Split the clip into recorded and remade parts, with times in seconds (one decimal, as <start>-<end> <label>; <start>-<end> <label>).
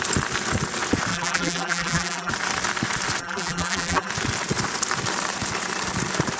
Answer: 0.0-1.1 recorded; 1.1-2.3 remade; 2.3-3.2 recorded; 3.2-4.1 remade; 4.1-6.4 recorded